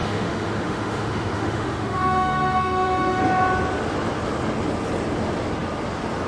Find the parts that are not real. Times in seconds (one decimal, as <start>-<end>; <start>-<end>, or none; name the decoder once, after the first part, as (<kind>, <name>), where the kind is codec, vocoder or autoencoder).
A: 0.0-3.2 (autoencoder, DAC-VAE)